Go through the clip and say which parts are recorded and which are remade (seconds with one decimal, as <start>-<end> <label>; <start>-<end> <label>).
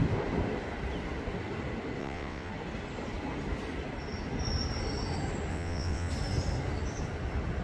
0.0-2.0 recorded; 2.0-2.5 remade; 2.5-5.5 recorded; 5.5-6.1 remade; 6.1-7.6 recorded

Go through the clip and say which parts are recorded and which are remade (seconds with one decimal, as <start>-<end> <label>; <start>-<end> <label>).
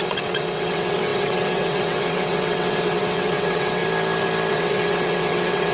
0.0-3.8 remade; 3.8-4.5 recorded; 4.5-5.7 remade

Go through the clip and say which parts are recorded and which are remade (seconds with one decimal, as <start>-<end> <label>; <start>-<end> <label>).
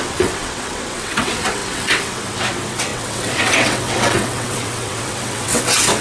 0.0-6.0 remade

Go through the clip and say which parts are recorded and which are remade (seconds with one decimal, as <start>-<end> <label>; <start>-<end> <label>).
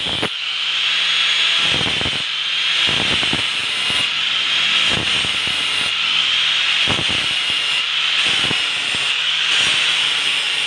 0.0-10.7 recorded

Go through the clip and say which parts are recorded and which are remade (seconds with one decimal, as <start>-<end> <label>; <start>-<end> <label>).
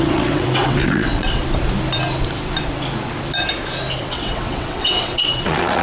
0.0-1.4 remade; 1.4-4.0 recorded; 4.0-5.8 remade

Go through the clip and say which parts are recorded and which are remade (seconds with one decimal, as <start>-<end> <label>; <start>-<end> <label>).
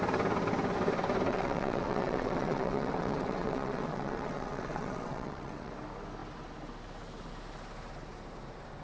0.0-1.3 recorded; 1.3-5.7 remade; 5.7-8.8 recorded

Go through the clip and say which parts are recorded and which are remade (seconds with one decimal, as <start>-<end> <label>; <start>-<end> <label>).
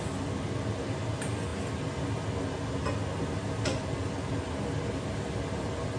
0.0-6.0 recorded